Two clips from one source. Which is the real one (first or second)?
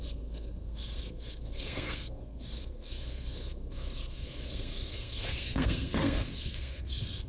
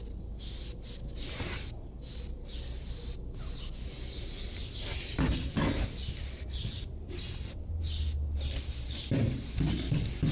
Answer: second